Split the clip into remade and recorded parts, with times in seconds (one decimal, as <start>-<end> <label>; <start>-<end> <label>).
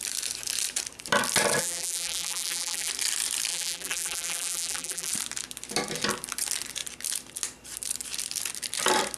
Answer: 0.0-1.6 recorded; 1.6-2.9 remade; 2.9-3.5 recorded; 3.5-5.1 remade; 5.1-9.2 recorded